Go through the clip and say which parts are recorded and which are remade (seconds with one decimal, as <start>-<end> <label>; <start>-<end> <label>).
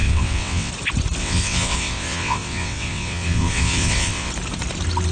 0.0-0.7 remade; 0.7-1.2 recorded; 1.2-4.3 remade; 4.3-5.1 recorded